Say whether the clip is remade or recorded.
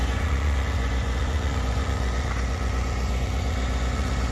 remade